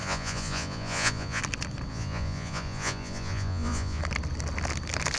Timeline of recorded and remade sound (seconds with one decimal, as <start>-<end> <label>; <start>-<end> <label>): 0.0-1.4 remade; 1.4-1.9 recorded; 1.9-4.0 remade; 4.0-5.2 recorded